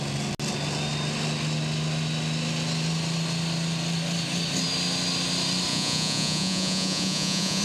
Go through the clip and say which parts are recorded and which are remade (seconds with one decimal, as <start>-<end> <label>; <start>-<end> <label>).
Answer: 0.0-5.7 recorded; 5.7-7.6 remade